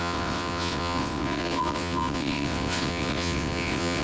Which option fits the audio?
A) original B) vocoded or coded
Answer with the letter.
B